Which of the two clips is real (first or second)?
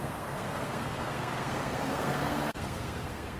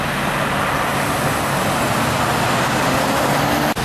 second